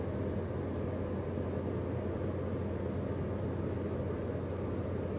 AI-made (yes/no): no